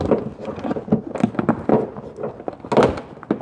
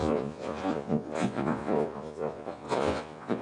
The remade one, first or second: second